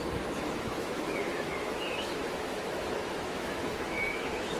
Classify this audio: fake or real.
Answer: fake